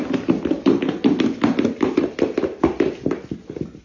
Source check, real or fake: real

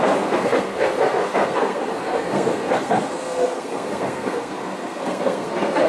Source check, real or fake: fake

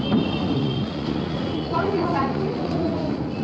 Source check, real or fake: fake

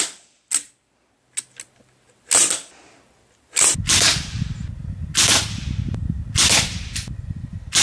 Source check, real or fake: real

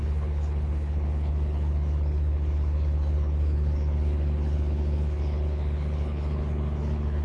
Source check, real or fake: fake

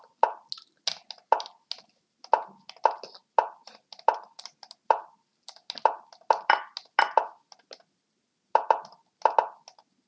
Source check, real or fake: real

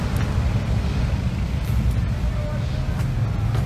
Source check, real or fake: real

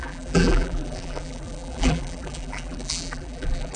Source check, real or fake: fake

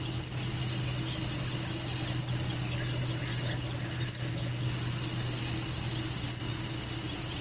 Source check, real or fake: real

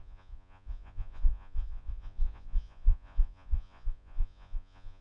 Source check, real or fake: fake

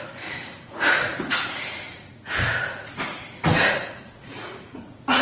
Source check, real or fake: fake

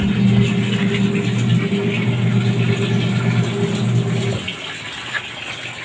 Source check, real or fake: real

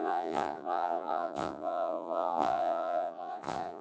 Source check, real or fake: fake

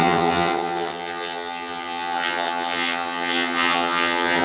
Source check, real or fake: fake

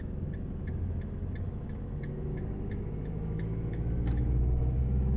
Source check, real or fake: fake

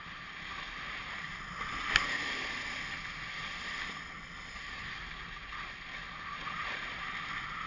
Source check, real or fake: real